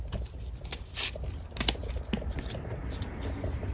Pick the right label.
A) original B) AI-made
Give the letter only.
A